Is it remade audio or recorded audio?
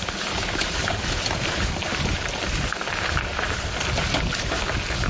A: recorded